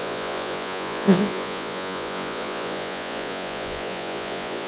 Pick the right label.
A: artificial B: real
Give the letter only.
A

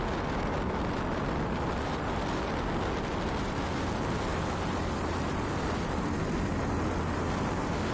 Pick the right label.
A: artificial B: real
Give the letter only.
B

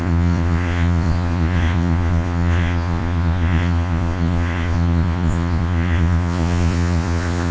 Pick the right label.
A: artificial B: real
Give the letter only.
A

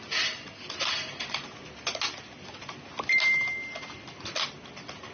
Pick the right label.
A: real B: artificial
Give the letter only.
A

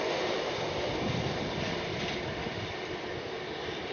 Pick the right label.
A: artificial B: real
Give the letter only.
B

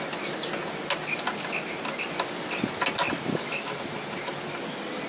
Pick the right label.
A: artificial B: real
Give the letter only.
B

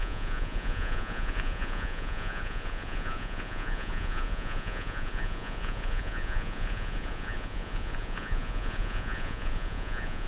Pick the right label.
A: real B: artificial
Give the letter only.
B